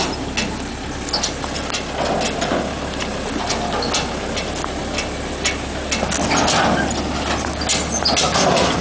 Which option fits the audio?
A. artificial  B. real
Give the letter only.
B